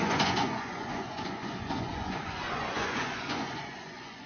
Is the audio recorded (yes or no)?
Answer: no